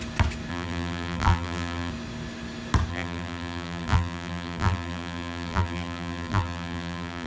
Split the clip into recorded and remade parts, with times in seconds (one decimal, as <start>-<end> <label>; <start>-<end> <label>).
0.0-0.5 recorded; 0.5-1.9 remade; 1.9-2.9 recorded; 2.9-7.3 remade